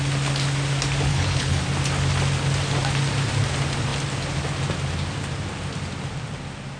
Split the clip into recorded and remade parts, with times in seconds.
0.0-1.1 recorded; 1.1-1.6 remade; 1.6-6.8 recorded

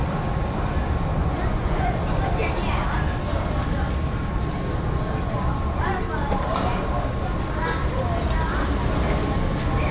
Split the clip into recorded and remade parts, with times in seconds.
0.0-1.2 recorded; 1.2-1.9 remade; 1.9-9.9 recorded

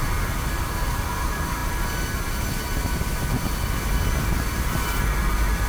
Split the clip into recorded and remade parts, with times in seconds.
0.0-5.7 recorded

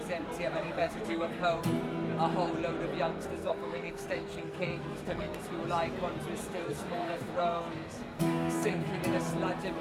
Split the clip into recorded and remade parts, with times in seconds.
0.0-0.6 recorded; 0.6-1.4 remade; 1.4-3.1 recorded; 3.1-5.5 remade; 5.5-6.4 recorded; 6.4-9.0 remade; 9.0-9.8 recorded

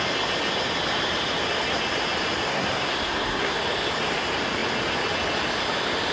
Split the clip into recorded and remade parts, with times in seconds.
0.0-2.5 recorded; 2.5-3.6 remade; 3.6-6.1 recorded

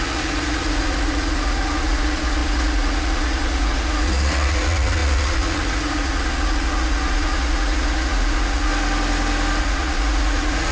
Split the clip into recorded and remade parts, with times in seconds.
0.0-8.7 remade; 8.7-9.6 recorded; 9.6-10.7 remade